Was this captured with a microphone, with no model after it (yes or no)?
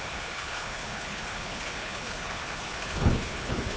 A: no